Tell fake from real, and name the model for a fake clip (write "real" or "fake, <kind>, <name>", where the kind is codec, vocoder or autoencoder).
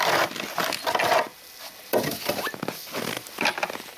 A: real